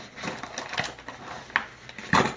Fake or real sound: real